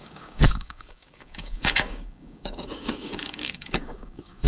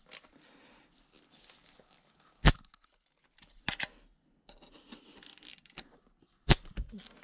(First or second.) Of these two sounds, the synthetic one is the first